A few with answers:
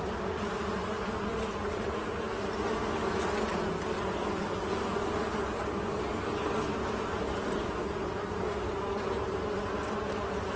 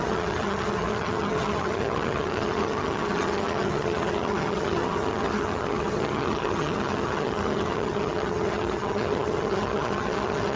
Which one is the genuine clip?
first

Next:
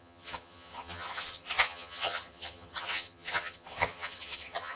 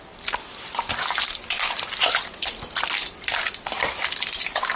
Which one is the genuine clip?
second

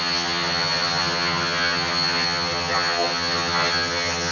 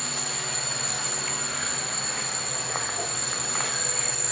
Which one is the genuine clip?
second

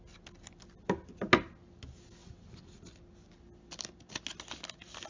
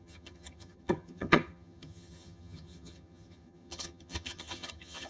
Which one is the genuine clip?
first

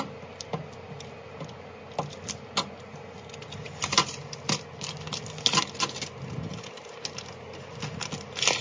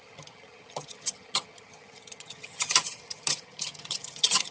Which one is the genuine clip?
first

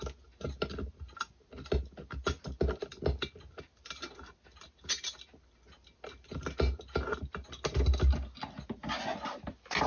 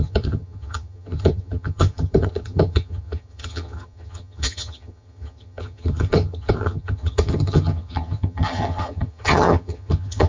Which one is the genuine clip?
first